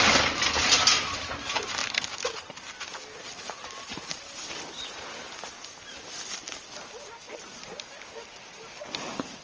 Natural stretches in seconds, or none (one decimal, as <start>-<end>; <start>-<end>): 0.0-9.4